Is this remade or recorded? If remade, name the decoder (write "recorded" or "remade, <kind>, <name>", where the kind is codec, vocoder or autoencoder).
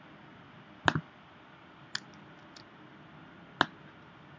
recorded